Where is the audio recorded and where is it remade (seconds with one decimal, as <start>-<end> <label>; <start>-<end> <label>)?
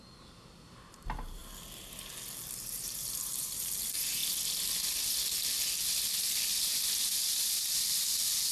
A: 0.0-1.4 remade; 1.4-2.6 recorded; 2.6-4.2 remade; 4.2-7.7 recorded; 7.7-8.5 remade